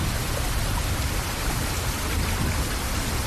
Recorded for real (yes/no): yes